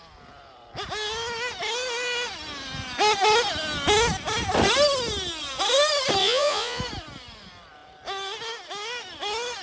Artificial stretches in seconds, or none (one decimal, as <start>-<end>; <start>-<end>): 6.2-6.8